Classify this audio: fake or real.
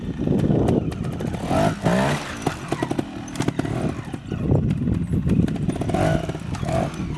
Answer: real